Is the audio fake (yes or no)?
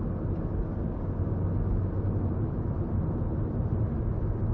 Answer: no